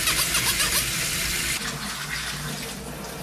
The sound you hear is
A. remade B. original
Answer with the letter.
B